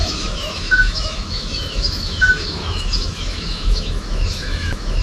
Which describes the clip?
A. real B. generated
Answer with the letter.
B